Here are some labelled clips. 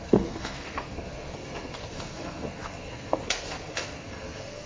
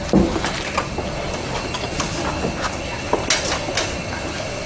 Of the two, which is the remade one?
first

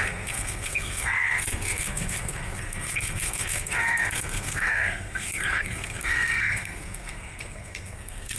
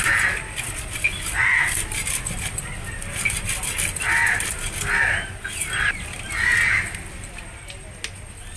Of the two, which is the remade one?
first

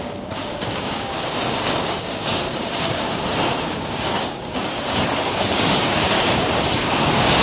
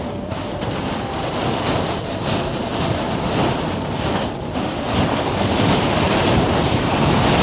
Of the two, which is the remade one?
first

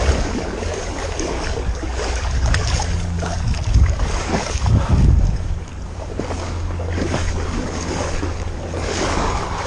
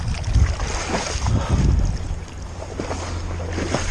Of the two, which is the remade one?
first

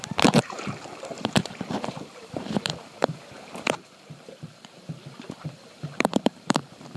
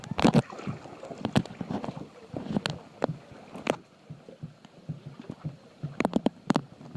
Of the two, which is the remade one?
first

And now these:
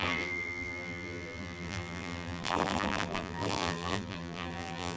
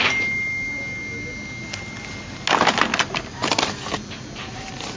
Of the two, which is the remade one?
first